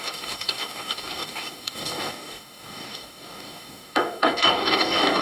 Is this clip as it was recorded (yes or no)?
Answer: no